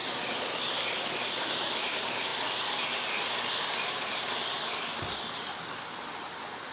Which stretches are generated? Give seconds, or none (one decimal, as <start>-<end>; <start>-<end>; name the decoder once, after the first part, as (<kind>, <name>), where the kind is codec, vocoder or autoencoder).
none